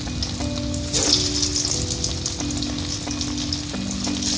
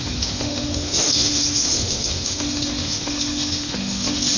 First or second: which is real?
first